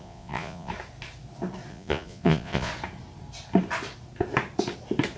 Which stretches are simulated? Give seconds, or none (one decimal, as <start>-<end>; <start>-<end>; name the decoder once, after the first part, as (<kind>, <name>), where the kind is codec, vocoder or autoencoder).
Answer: 0.0-0.7 (vocoder, Vocos); 1.7-2.7